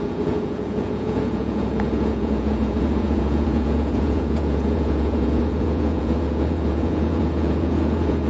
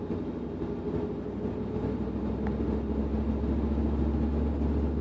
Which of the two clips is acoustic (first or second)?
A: second